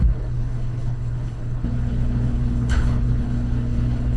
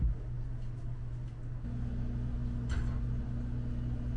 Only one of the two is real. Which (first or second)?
second